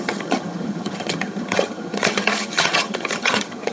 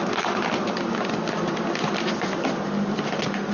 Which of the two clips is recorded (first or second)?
second